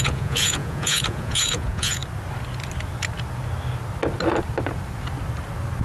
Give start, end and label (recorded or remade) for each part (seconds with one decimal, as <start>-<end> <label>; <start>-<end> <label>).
0.0-2.0 remade; 2.0-5.8 recorded